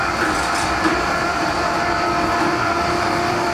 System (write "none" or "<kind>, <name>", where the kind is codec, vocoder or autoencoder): vocoder, BigVGAN v2